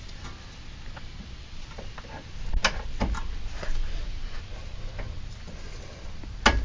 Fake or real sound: real